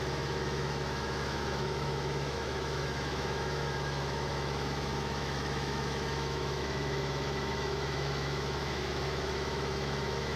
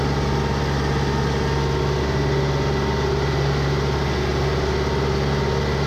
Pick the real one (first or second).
second